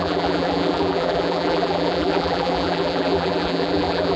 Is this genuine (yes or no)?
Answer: no